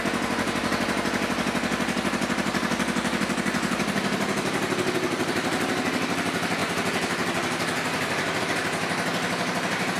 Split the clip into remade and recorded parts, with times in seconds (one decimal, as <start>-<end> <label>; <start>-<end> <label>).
0.0-10.0 recorded